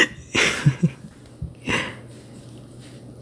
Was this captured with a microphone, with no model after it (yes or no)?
yes